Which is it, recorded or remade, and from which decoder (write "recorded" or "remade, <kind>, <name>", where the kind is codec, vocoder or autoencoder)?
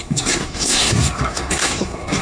remade, codec, SNAC